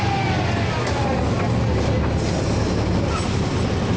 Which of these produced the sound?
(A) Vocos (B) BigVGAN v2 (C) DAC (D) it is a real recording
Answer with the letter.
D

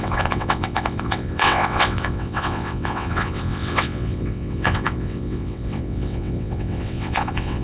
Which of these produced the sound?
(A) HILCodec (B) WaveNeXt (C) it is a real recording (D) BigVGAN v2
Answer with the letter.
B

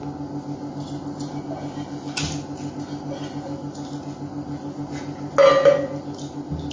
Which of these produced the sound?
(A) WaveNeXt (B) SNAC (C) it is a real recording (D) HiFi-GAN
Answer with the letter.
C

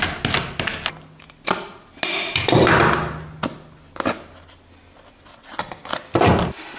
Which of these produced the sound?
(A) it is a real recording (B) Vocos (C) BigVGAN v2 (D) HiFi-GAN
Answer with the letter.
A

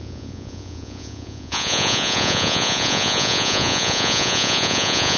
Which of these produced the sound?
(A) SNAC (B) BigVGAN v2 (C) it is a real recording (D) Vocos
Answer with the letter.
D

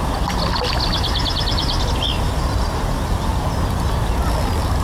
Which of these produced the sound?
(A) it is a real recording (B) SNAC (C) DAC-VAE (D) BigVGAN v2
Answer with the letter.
A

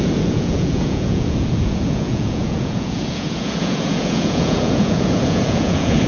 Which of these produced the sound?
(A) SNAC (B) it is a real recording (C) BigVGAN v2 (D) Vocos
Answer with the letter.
D